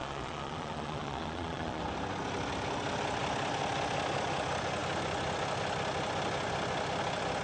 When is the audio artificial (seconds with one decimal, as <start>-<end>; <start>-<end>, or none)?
0.0-1.8